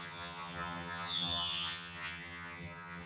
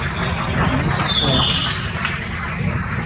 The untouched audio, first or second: second